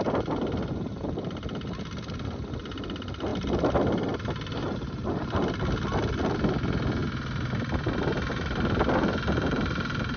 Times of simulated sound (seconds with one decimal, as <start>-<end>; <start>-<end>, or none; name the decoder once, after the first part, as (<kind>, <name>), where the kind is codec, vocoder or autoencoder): none